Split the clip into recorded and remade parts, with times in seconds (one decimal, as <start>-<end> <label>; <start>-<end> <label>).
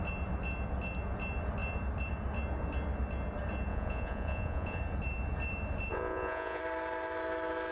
0.0-3.7 recorded; 3.7-4.8 remade; 4.8-5.9 recorded; 5.9-6.6 remade; 6.6-7.7 recorded